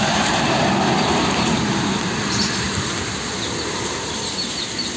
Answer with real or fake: real